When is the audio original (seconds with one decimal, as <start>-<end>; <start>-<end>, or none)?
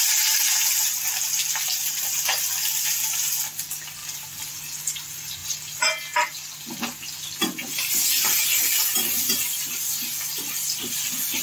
0.0-1.4; 2.8-4.0; 4.6-11.4